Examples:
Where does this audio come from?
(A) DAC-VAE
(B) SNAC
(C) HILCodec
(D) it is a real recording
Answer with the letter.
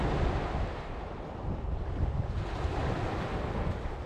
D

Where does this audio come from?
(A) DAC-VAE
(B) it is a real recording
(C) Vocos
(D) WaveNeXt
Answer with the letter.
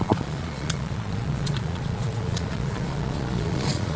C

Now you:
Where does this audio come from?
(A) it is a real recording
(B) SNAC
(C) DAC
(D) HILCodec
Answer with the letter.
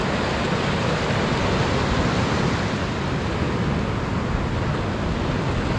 A